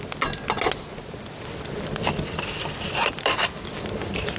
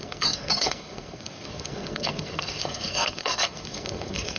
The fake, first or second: second